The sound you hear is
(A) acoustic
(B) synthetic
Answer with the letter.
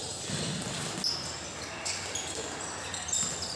A